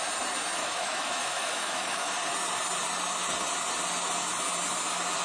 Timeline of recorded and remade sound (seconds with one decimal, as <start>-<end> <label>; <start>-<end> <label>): 0.0-0.6 recorded; 0.6-2.1 remade; 2.1-5.2 recorded